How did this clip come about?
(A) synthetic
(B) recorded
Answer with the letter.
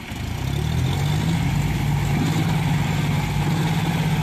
B